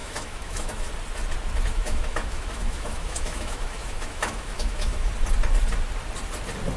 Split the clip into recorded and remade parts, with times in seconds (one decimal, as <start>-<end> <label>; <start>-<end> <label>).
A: 0.0-0.9 remade; 0.9-1.7 recorded; 1.7-5.1 remade; 5.1-6.8 recorded